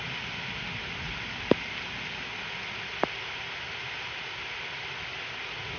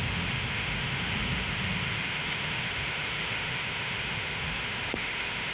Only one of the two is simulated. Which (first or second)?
second